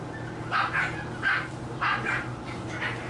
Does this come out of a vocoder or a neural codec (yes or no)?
no